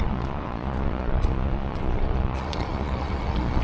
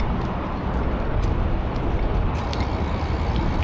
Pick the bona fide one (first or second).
second